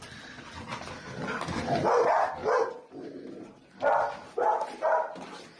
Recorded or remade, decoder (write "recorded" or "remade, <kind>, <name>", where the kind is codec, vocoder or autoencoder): recorded